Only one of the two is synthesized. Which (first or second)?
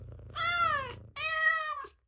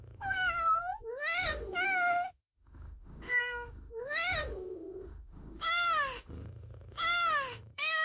second